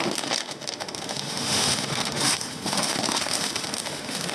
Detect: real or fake fake